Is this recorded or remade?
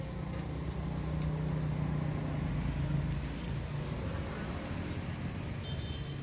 recorded